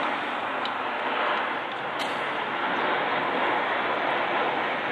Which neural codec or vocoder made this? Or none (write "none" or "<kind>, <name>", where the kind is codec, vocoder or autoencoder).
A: none